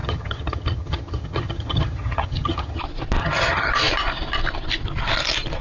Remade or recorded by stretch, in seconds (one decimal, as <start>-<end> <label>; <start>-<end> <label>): 0.0-2.8 remade; 2.8-3.2 recorded; 3.2-3.7 remade; 3.7-5.6 recorded